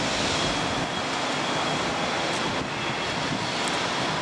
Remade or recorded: recorded